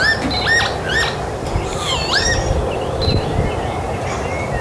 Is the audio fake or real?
real